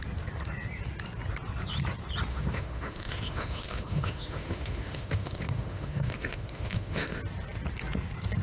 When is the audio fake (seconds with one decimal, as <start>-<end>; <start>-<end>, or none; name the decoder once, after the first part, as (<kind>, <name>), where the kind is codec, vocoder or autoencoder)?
2.3-7.2 (autoencoder, DAC-VAE)